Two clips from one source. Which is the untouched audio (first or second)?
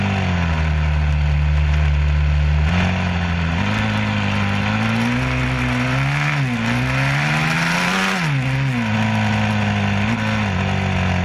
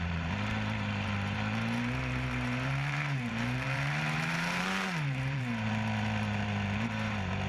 first